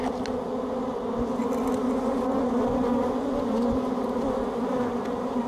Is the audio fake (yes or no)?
no